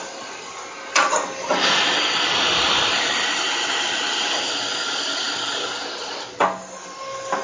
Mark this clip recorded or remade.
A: recorded